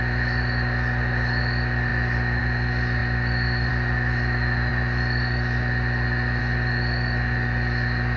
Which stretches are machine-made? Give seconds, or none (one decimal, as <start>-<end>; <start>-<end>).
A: none